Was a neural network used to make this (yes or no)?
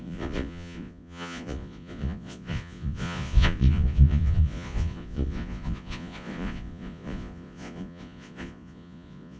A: yes